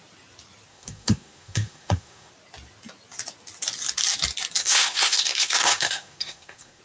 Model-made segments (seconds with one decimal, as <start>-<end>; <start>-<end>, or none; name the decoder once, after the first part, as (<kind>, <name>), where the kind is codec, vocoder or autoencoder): 0.7-2.3 (codec, SNAC); 4.6-6.8